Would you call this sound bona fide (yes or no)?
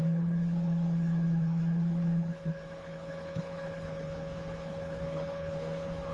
no